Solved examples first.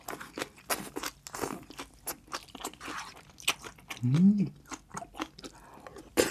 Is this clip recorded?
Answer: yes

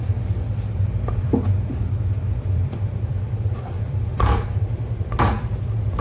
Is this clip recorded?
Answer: no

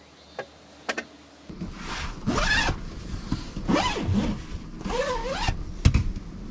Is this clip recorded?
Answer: yes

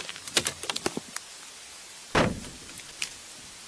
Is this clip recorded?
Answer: yes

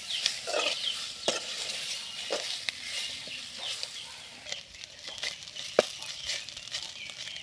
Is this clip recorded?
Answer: no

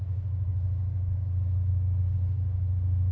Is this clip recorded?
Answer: yes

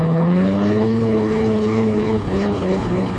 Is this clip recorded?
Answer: no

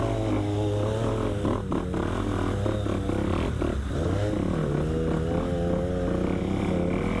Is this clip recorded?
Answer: yes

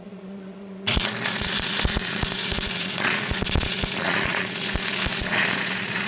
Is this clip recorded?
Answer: no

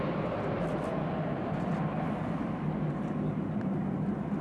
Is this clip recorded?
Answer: yes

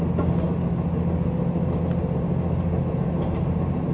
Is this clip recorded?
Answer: yes